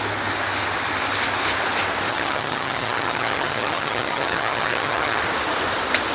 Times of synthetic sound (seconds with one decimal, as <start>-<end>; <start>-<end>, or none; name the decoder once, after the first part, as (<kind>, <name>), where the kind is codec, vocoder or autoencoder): 2.1-5.2 (vocoder, HiFi-GAN)